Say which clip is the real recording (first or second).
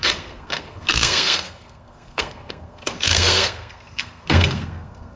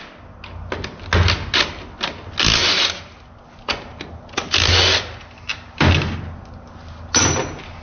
second